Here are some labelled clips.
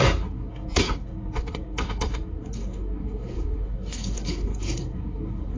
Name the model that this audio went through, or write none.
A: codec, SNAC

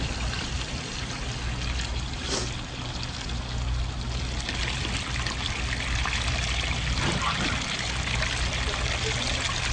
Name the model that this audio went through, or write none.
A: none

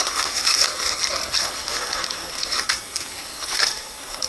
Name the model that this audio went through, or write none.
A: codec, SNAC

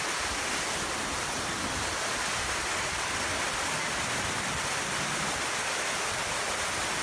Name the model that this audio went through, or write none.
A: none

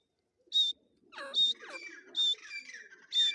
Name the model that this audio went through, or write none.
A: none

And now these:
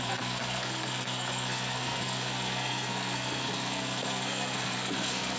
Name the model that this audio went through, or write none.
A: codec, SNAC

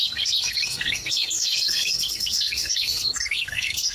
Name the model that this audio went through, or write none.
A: codec, SNAC